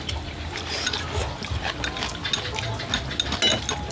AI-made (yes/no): no